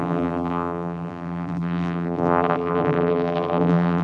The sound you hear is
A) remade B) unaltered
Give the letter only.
A